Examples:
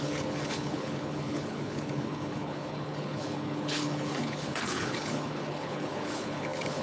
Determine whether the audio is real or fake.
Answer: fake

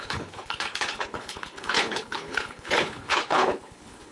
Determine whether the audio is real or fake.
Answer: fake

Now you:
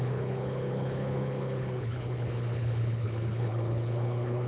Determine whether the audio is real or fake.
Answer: fake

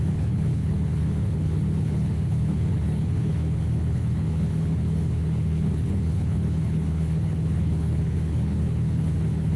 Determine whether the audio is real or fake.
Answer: fake